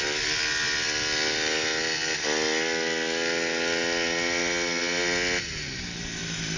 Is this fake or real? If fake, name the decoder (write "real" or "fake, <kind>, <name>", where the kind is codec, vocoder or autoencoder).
real